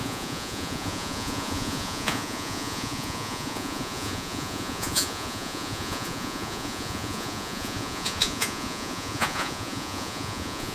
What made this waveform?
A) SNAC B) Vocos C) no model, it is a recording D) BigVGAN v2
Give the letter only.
B